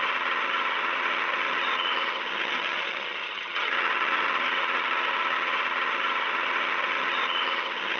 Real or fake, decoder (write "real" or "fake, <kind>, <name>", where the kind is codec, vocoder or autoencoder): fake, vocoder, HiFi-GAN